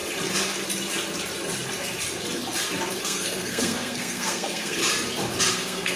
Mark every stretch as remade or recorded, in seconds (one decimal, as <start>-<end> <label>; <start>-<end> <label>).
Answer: 0.0-3.0 recorded; 3.0-4.8 remade; 4.8-5.5 recorded; 5.5-6.0 remade